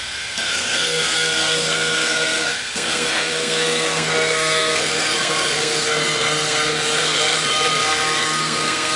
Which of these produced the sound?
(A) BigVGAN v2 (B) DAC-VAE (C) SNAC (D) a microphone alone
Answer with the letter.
C